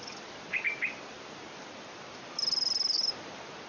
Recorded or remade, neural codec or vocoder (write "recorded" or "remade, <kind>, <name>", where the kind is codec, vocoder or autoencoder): remade, vocoder, BigVGAN v2